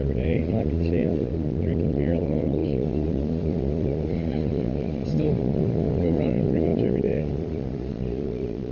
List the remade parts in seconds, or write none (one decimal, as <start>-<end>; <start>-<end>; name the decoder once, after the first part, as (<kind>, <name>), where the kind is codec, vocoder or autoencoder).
0.0-8.7 (vocoder, Vocos)